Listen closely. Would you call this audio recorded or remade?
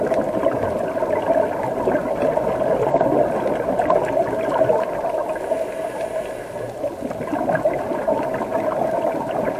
recorded